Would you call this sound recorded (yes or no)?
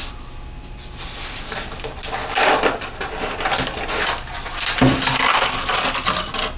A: yes